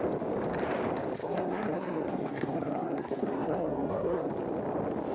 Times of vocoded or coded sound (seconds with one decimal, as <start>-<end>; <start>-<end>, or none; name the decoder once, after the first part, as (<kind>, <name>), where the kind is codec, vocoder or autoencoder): 1.2-4.3 (codec, SNAC)